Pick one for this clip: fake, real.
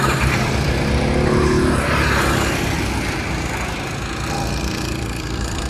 real